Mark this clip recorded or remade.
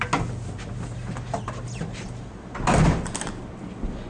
recorded